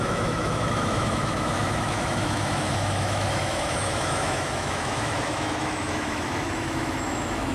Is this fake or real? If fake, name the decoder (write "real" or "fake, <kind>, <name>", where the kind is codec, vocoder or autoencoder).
fake, autoencoder, DAC-VAE